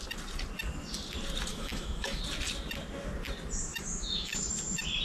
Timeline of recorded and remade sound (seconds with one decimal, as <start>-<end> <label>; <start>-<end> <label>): 0.0-1.5 recorded; 1.5-2.2 remade; 2.2-3.7 recorded; 3.7-4.5 remade; 4.5-5.0 recorded